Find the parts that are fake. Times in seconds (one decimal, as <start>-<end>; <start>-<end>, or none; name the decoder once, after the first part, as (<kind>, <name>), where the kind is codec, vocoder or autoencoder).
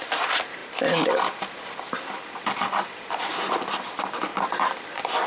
none